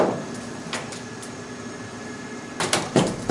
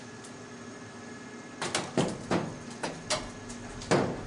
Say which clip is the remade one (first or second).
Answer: first